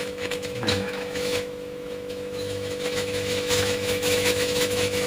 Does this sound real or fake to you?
fake